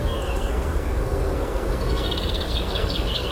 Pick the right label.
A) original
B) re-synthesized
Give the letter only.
B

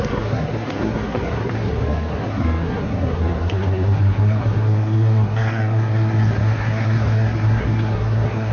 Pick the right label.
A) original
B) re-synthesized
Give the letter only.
B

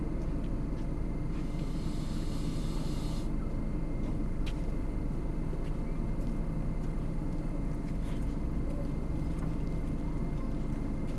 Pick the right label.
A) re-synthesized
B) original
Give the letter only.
B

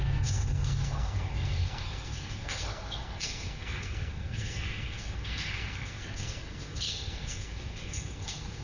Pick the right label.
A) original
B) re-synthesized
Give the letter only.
B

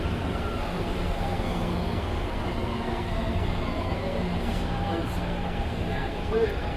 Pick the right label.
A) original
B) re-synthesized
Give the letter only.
B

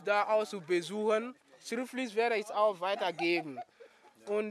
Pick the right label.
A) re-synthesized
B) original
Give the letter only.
B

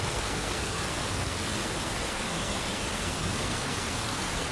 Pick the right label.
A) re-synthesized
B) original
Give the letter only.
A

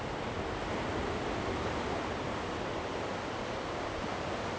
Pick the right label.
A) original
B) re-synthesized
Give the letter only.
A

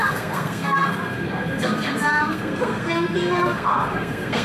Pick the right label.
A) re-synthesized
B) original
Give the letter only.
A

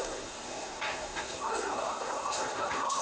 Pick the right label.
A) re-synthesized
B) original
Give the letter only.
A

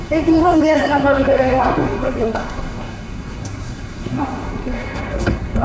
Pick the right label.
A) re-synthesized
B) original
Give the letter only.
A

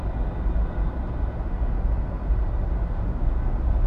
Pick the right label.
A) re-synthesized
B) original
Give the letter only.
B